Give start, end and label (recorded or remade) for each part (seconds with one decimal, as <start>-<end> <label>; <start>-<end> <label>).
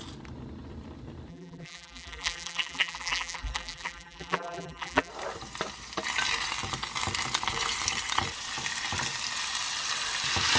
0.0-1.3 recorded; 1.3-5.1 remade; 5.1-10.6 recorded